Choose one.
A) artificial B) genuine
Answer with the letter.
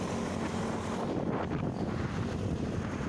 B